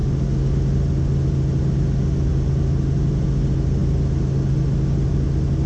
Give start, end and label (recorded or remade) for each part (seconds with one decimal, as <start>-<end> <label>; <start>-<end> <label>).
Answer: 0.0-5.7 recorded